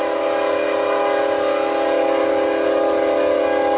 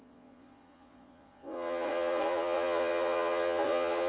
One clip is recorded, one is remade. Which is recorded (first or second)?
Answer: first